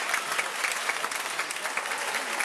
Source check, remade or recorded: recorded